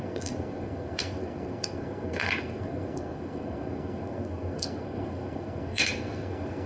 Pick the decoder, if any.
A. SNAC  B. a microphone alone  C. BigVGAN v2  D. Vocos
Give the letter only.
A